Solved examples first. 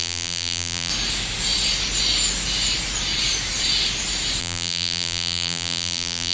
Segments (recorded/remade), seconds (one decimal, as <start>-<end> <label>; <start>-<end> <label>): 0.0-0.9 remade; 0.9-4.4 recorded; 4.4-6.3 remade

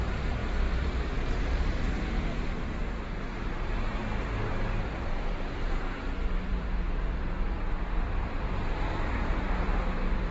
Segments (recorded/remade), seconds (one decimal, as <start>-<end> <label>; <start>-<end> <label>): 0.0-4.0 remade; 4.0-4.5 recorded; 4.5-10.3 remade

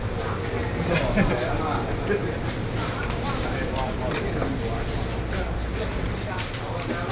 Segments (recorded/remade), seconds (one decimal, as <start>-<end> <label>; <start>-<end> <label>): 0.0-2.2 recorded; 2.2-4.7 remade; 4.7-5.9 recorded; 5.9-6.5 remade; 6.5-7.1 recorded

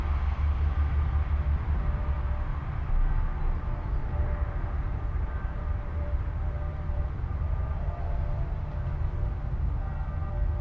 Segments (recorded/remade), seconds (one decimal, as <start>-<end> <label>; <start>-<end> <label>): 0.0-4.0 recorded; 4.0-7.9 remade; 7.9-10.6 recorded

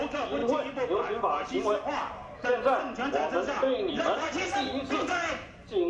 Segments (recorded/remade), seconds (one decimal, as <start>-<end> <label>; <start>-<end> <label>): 0.0-0.4 remade; 0.4-3.9 recorded; 3.9-5.9 remade